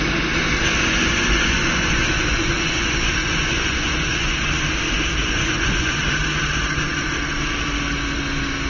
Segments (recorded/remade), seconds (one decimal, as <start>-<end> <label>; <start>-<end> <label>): 0.0-0.8 recorded; 0.8-4.5 remade; 4.5-5.2 recorded; 5.2-6.0 remade; 6.0-8.7 recorded